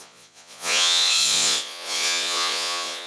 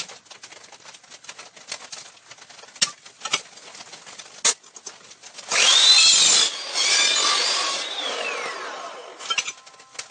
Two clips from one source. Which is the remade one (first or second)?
first